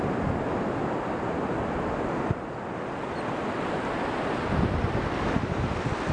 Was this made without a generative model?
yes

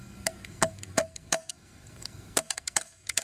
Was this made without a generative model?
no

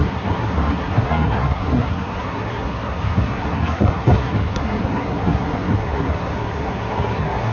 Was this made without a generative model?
no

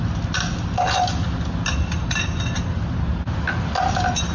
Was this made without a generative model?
yes